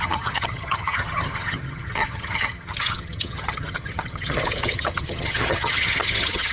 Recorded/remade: remade